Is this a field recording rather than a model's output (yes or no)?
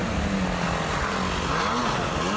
yes